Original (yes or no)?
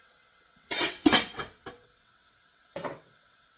no